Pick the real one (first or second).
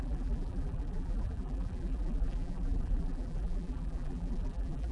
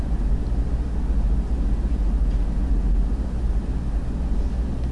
second